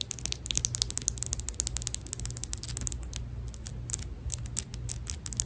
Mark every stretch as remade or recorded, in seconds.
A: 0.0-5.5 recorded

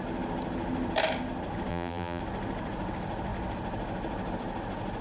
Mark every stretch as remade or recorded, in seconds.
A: 0.0-1.7 recorded; 1.7-2.2 remade; 2.2-5.0 recorded

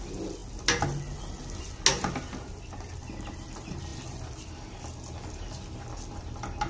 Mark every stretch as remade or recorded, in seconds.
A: 0.0-6.7 recorded

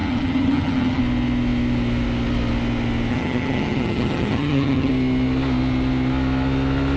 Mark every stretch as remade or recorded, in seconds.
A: 0.0-1.0 remade; 1.0-3.1 recorded; 3.1-4.9 remade; 4.9-7.0 recorded

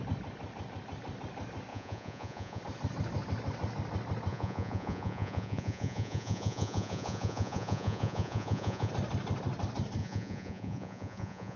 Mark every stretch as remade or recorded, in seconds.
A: 0.0-1.7 recorded; 1.7-2.6 remade; 2.6-4.3 recorded; 4.3-8.9 remade; 8.9-10.0 recorded; 10.0-11.6 remade

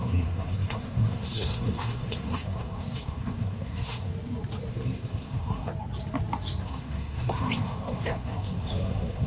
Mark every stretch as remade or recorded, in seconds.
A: 0.0-4.1 remade; 4.1-4.7 recorded; 4.7-5.7 remade; 5.7-6.6 recorded; 6.6-9.3 remade

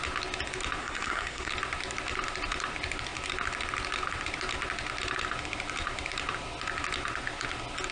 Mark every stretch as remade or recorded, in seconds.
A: 0.0-0.8 recorded; 0.8-1.5 remade; 1.5-7.9 recorded

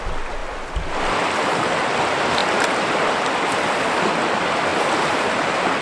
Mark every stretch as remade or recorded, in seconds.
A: 0.0-2.4 recorded; 2.4-3.5 remade; 3.5-5.8 recorded